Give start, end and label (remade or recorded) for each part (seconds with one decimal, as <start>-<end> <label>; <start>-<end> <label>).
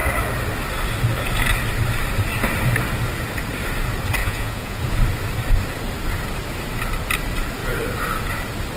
0.0-4.2 recorded; 4.2-4.8 remade; 4.8-8.8 recorded